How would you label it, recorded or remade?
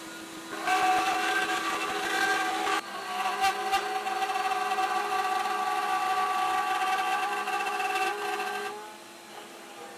recorded